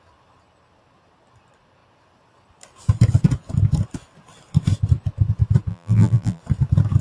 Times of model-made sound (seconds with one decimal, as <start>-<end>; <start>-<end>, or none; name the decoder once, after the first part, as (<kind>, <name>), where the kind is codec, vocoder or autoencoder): 5.7-6.4 (vocoder, BigVGAN v2)